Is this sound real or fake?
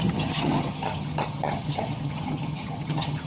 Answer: fake